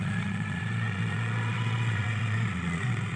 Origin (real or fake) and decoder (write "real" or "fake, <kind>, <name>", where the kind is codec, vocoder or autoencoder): fake, vocoder, Vocos